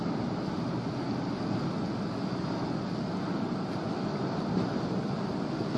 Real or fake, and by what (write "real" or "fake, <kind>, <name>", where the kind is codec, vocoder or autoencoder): real